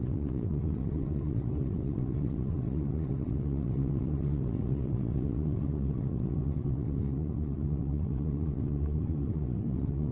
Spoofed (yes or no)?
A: yes